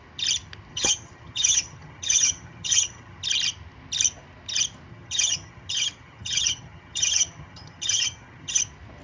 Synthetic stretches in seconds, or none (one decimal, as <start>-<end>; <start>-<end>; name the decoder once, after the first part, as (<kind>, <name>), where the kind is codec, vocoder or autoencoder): 0.7-3.2 (vocoder, HiFi-GAN); 4.9-8.6